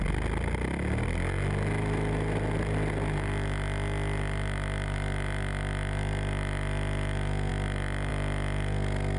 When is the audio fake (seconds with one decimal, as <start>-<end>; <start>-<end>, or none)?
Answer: none